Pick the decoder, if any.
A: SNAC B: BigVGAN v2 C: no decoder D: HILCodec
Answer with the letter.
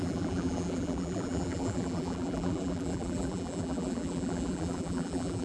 B